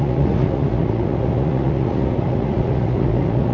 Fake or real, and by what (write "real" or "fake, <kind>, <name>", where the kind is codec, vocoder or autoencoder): fake, vocoder, Vocos